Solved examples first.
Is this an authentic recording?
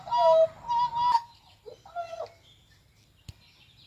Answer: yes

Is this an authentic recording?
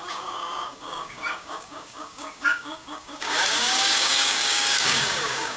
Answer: no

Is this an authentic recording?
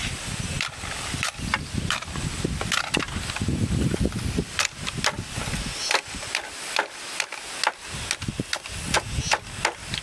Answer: yes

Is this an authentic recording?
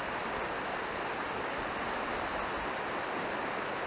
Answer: yes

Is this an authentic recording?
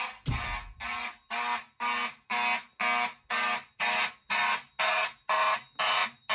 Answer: yes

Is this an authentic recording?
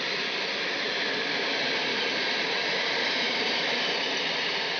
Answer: yes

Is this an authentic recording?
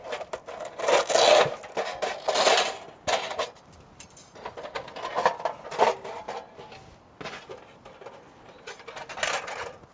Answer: yes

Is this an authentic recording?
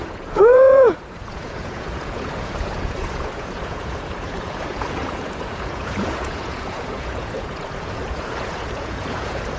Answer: no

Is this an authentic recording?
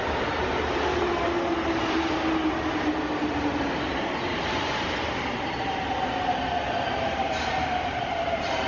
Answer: yes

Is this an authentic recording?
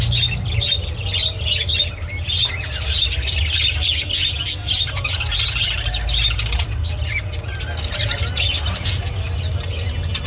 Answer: yes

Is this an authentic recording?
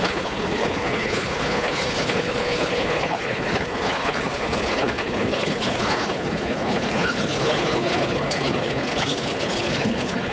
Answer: no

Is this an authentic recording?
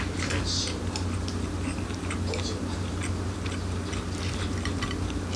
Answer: yes